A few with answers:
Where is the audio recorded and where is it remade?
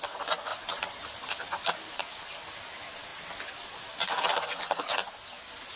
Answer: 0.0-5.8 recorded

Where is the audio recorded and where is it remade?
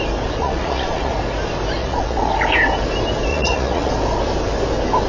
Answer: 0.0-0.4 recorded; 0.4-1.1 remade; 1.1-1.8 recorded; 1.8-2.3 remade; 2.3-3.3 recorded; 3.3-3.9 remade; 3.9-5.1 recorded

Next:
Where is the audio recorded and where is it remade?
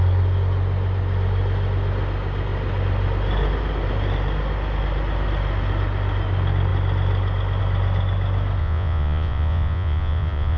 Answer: 0.0-8.6 recorded; 8.6-10.6 remade